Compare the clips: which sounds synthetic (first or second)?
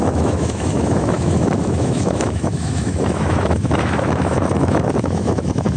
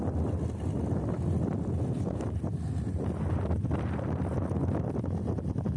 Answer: first